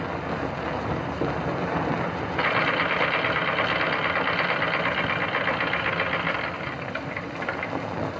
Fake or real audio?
real